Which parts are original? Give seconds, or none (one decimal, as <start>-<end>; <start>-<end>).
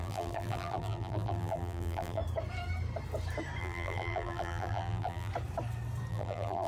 2.2-3.6; 5.3-6.1